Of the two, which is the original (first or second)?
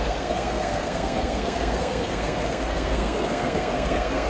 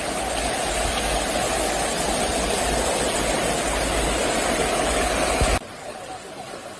second